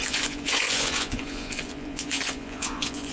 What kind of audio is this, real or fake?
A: fake